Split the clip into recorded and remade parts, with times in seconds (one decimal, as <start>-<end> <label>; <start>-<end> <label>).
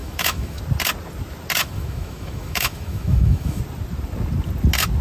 0.0-0.6 remade; 0.6-1.6 recorded; 1.6-3.6 remade; 3.6-5.0 recorded